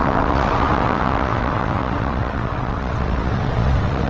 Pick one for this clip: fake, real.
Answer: fake